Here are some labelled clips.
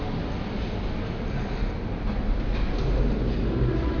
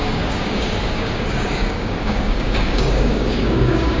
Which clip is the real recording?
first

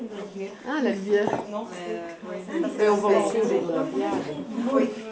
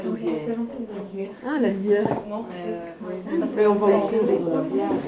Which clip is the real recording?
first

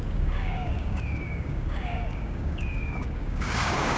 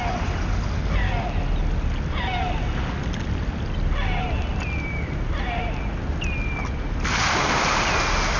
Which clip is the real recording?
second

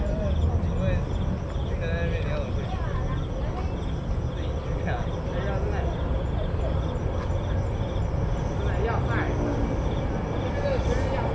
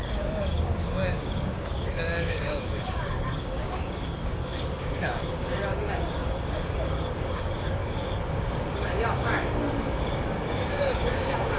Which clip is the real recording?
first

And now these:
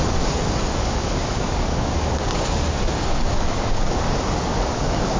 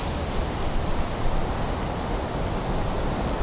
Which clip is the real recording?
second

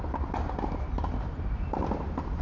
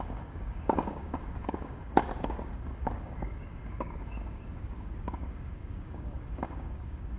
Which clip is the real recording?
first